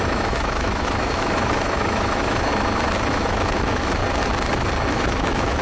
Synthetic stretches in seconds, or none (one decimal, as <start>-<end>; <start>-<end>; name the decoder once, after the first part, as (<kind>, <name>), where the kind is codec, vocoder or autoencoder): 0.0-2.5 (autoencoder, DAC-VAE); 3.1-4.0; 4.9-5.6